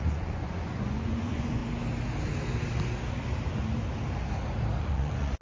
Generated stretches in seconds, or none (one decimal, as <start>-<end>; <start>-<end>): 0.0-1.6; 4.8-5.4